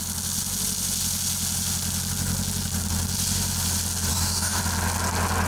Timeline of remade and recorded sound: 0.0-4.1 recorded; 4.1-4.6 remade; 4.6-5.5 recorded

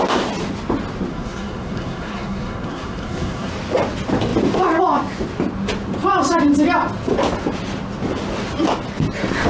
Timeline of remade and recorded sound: 0.0-1.1 recorded; 1.1-3.5 remade; 3.5-9.5 recorded

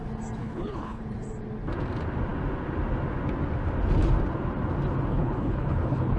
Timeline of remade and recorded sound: 0.0-0.4 recorded; 0.4-1.0 remade; 1.0-5.1 recorded; 5.1-6.2 remade

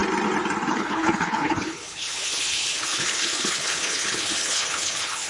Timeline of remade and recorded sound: 0.0-0.7 recorded; 0.7-5.3 remade

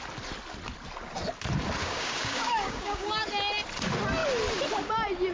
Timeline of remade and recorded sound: 0.0-1.8 recorded; 1.8-3.2 remade; 3.2-5.3 recorded

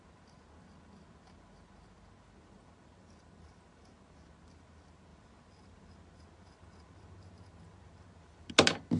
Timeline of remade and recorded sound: 0.0-9.0 recorded

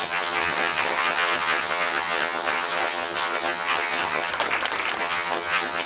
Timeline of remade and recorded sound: 0.0-4.3 remade; 4.3-5.0 recorded; 5.0-5.9 remade

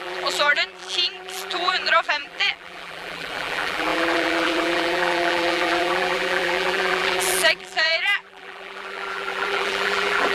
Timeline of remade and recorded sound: 0.0-10.3 remade